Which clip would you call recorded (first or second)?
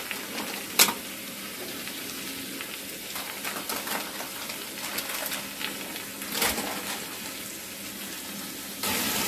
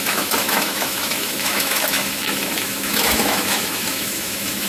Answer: first